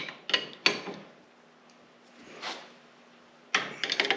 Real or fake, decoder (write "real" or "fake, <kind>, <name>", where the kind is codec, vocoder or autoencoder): real